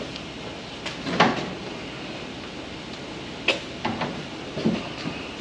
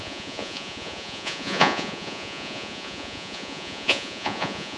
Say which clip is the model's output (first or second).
second